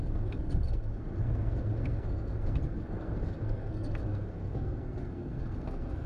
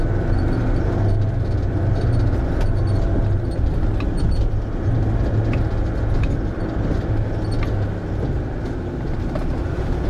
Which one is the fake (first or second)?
first